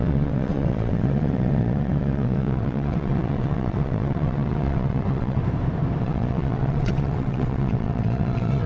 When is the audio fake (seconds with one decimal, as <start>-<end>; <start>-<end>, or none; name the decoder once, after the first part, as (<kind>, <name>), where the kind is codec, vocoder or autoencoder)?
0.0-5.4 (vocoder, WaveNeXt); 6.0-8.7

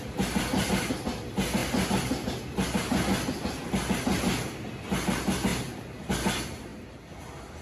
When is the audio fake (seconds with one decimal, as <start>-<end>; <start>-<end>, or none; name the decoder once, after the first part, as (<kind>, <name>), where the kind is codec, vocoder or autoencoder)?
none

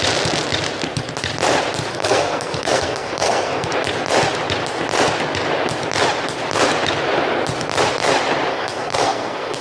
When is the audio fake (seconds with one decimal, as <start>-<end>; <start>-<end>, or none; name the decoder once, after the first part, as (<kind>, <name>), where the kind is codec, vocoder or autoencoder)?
1.9-3.7 (codec, SNAC); 8.5-9.6